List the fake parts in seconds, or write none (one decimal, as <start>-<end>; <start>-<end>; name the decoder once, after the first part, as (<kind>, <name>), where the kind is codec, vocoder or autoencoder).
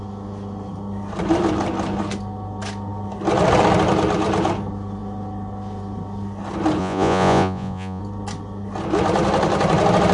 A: 6.8-8.0 (vocoder, Vocos)